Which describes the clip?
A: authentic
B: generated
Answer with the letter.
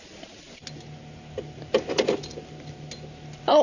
A